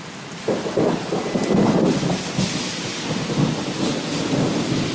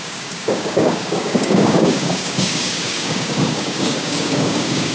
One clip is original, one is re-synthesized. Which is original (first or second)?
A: first